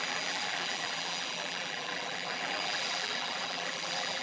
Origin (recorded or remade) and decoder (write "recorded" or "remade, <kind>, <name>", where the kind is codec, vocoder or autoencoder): remade, vocoder, BigVGAN v2